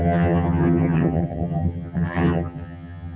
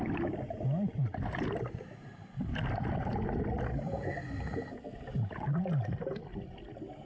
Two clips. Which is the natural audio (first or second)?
second